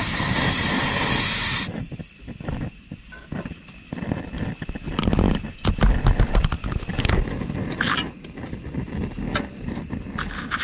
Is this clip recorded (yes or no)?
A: yes